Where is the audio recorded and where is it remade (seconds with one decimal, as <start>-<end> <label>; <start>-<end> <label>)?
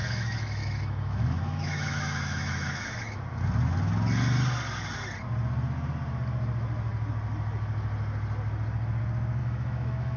0.0-3.2 remade; 3.2-9.4 recorded; 9.4-10.2 remade